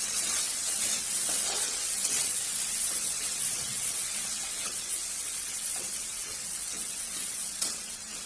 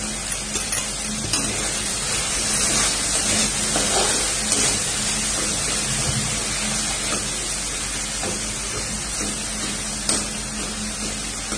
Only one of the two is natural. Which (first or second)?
second